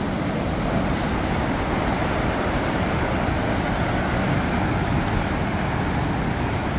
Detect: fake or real real